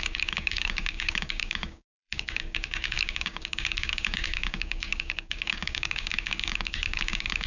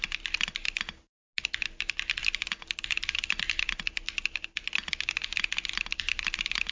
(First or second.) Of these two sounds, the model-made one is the first